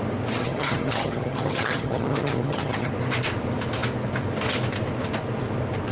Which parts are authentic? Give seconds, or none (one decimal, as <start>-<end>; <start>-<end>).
0.0-0.4; 2.9-5.9